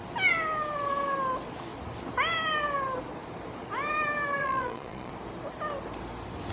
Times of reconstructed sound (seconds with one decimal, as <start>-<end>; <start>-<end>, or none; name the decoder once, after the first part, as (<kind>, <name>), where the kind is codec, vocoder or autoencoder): 4.4-5.1 (vocoder, Vocos)